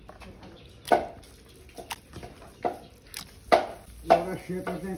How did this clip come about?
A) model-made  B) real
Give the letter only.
B